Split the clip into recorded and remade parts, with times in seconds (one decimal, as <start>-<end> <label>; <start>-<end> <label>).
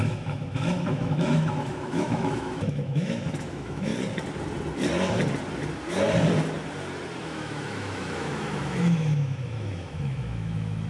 0.0-3.9 remade; 3.9-7.2 recorded; 7.2-10.9 remade